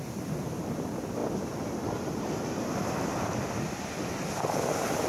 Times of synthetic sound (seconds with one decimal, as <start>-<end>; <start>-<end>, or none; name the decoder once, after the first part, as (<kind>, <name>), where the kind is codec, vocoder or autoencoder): none